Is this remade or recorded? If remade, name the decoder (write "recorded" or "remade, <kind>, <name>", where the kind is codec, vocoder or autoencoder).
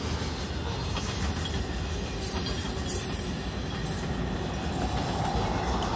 recorded